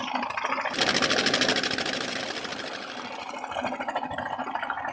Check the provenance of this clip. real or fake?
real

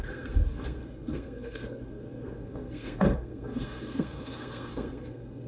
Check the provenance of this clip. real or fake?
fake